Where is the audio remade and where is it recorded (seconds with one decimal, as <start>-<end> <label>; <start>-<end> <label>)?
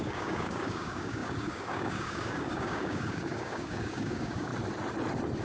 0.0-4.5 remade; 4.5-5.4 recorded